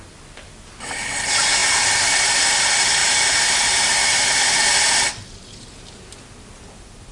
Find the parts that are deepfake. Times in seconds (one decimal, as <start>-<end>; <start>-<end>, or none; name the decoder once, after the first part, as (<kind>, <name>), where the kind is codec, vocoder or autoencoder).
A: 3.0-4.4 (vocoder, BigVGAN v2)